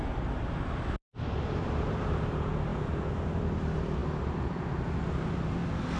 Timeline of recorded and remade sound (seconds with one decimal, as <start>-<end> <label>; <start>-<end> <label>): 0.0-4.0 remade; 4.0-6.0 recorded